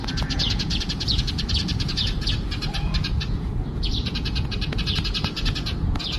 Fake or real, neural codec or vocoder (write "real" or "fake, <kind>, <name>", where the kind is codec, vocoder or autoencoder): fake, vocoder, Vocos